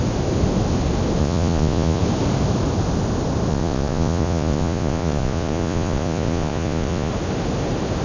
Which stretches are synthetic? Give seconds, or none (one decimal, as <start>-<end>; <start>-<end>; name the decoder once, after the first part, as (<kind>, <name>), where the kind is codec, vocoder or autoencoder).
1.2-2.0 (vocoder, Vocos); 3.5-7.1